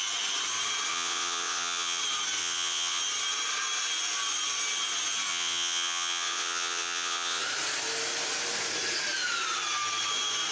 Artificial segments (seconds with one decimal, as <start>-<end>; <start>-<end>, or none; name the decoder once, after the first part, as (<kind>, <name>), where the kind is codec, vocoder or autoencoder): 0.9-2.0 (vocoder, WaveNeXt); 2.4-3.0; 5.3-7.4

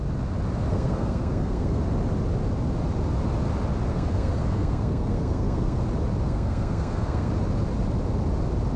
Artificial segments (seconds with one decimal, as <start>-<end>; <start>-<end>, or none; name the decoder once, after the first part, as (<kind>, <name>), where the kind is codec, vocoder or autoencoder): 0.7-1.8 (codec, SNAC); 3.9-5.8; 6.2-7.3

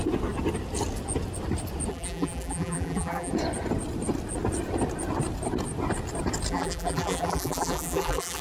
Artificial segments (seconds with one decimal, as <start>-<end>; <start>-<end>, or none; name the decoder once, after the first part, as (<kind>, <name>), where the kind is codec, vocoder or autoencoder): 1.9-3.3 (vocoder, BigVGAN v2); 6.5-8.4

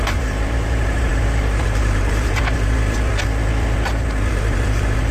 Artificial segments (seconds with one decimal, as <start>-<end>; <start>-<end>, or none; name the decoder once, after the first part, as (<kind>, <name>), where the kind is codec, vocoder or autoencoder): 0.0-3.1 (vocoder, BigVGAN v2); 4.3-5.1

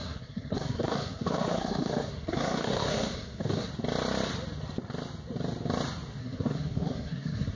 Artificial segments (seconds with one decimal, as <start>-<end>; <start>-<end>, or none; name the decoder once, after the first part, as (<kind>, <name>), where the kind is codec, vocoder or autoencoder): 0.0-3.7 (codec, SNAC); 6.2-7.6

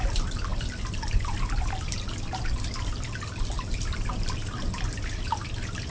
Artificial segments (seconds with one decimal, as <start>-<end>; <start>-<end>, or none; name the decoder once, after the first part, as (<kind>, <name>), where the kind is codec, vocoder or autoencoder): none

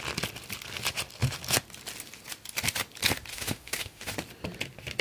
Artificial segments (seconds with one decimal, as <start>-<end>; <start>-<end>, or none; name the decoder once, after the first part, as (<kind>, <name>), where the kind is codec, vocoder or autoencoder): 3.3-4.1 (autoencoder, DAC-VAE)